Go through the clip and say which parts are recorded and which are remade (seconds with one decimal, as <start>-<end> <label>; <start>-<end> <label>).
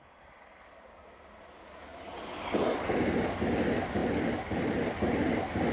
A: 0.0-5.7 recorded